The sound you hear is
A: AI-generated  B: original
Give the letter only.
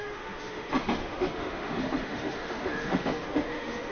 A